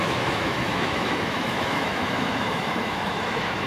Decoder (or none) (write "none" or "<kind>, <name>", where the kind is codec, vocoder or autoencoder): autoencoder, DAC-VAE